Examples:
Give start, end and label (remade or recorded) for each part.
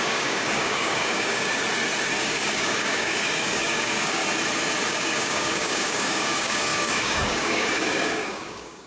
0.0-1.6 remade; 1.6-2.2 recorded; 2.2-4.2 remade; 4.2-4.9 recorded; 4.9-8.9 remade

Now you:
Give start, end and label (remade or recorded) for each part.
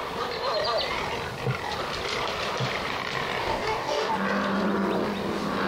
0.0-3.4 recorded; 3.4-4.1 remade; 4.1-5.7 recorded